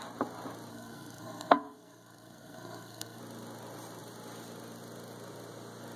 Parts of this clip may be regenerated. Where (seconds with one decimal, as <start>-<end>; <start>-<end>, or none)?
0.7-3.2